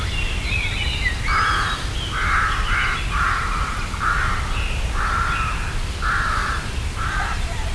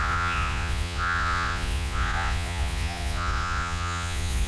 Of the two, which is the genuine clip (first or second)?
first